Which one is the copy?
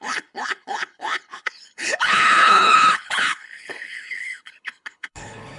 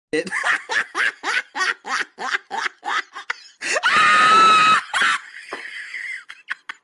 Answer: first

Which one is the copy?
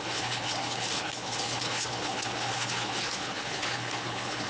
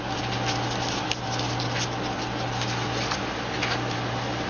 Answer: first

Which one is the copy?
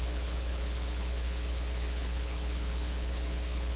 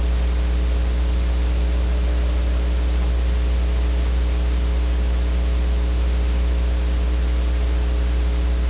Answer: first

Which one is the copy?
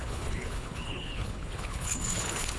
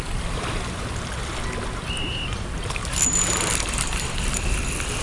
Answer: first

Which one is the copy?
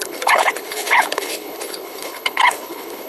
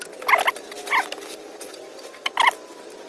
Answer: first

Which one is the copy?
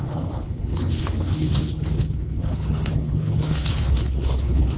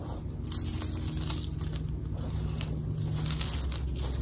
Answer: first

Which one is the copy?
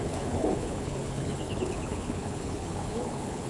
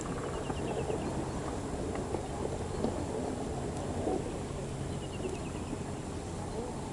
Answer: first